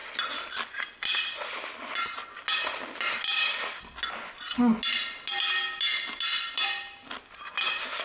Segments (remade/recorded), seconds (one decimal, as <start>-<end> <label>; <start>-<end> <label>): 0.0-8.0 recorded